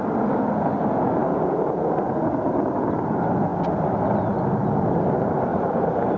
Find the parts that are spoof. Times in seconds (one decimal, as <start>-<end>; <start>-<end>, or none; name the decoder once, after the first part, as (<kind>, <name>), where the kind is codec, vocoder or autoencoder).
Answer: 5.5-6.2 (vocoder, BigVGAN v2)